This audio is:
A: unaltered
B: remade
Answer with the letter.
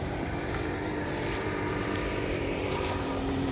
B